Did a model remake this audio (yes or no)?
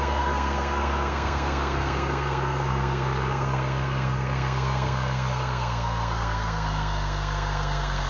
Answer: yes